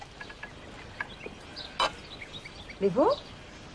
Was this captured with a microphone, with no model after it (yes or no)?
yes